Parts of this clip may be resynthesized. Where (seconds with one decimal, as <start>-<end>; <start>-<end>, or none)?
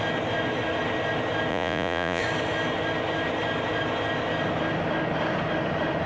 1.5-2.2